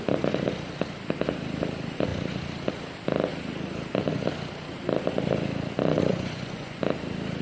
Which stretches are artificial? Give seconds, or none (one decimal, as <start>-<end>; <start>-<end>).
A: 6.1-6.8

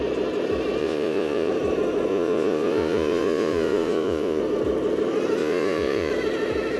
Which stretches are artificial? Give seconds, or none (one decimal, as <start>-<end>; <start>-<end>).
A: 0.8-1.5; 2.1-4.4; 5.4-6.1

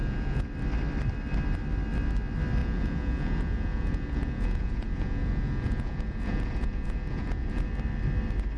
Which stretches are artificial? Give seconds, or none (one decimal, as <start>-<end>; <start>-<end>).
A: 0.0-0.5; 2.6-7.7

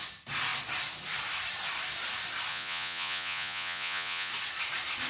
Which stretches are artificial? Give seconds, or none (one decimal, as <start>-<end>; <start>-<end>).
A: 2.5-4.3

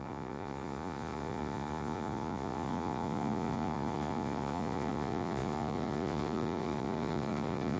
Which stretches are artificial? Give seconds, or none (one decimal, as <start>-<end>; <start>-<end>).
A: 0.0-7.8

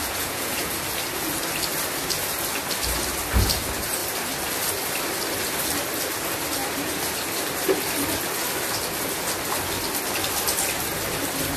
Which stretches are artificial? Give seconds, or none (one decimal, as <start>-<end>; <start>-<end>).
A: 0.0-0.7